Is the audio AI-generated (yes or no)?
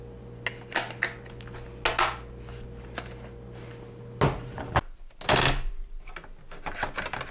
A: no